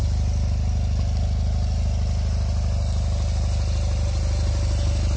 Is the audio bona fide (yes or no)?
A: yes